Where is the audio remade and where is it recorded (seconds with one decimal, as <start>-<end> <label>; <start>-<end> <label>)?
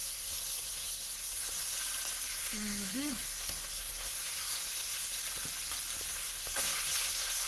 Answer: 0.0-1.8 remade; 1.8-2.3 recorded; 2.3-5.2 remade; 5.2-6.1 recorded; 6.1-7.5 remade